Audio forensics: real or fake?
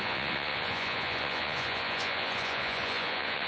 fake